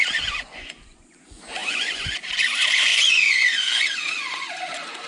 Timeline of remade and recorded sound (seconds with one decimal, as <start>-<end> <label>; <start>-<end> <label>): 0.0-5.1 remade